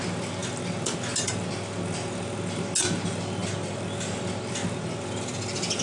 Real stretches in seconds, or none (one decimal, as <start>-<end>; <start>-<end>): 0.0-5.8

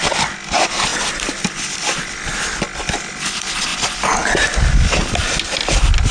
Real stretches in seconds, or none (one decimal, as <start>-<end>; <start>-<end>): 0.0-6.1

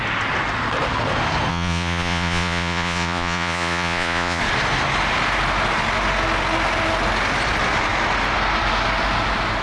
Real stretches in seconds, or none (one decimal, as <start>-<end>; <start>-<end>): 0.0-1.5; 4.4-9.6

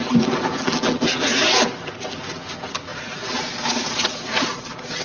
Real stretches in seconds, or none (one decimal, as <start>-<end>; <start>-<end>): 0.0-2.9

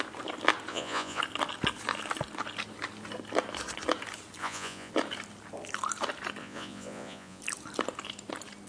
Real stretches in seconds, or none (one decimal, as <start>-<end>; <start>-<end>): 0.0-0.7; 1.2-4.4; 4.9-6.4; 7.4-8.7

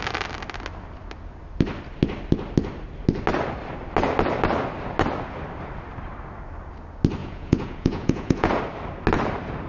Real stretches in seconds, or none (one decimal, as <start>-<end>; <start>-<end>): 0.0-7.2; 8.6-9.7